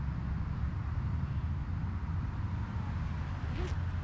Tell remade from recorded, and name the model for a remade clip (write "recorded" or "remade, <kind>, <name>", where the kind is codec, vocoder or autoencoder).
recorded